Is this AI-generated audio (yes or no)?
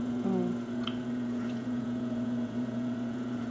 yes